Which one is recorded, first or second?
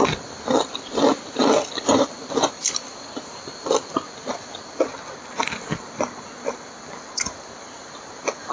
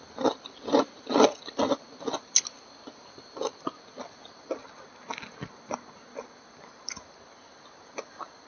second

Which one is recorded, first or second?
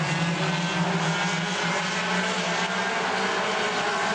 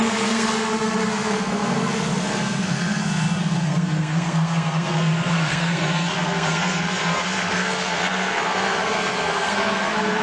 first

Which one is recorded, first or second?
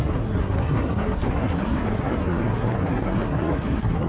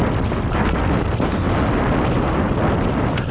second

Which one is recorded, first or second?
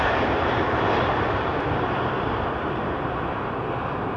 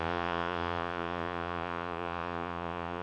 first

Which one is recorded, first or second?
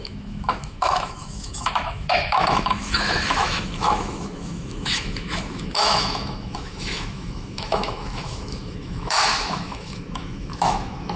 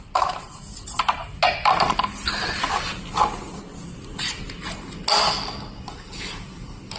second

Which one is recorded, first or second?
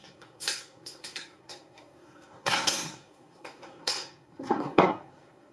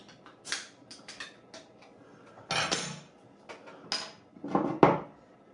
second